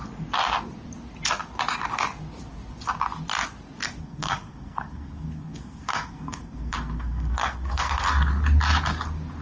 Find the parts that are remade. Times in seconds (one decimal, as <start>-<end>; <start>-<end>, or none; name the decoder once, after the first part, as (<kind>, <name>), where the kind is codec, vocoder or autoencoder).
4.0-8.3 (codec, SNAC)